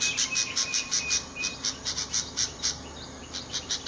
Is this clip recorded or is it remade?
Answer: remade